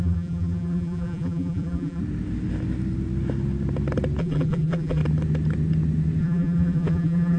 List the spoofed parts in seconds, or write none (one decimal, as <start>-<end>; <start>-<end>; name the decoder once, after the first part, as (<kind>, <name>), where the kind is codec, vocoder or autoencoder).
0.0-2.0 (vocoder, BigVGAN v2); 4.2-5.0; 6.2-7.4